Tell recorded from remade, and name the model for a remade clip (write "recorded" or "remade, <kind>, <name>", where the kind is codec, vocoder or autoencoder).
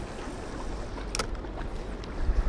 recorded